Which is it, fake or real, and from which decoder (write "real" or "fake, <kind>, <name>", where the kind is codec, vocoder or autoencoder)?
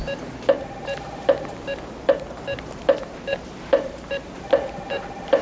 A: real